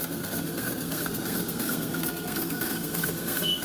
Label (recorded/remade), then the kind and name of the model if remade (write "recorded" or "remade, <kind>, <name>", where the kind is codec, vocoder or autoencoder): remade, codec, SNAC